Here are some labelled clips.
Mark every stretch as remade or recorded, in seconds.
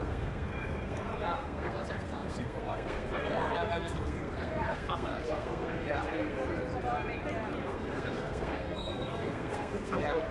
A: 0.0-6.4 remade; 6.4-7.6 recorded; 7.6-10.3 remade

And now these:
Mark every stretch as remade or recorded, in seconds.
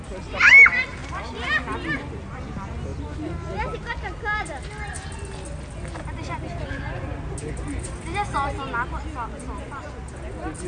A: 0.0-10.7 recorded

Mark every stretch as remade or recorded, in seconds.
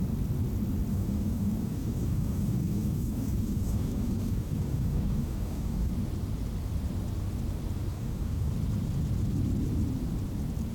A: 0.0-0.9 recorded; 0.9-5.9 remade; 5.9-7.9 recorded; 7.9-8.5 remade; 8.5-10.7 recorded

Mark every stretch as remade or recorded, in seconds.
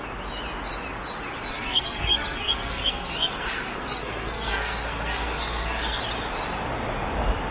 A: 0.0-1.5 recorded; 1.5-6.0 remade; 6.0-7.5 recorded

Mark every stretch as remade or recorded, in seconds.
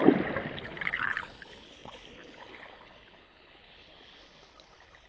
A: 0.0-0.6 recorded; 0.6-5.1 remade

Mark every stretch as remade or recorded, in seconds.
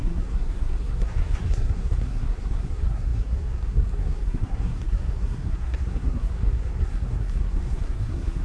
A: 0.0-8.4 remade